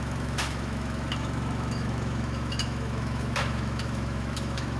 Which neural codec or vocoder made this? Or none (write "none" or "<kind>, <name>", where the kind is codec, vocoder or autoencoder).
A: autoencoder, DAC-VAE